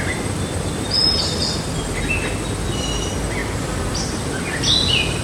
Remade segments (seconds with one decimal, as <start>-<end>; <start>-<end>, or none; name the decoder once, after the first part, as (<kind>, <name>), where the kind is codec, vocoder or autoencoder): none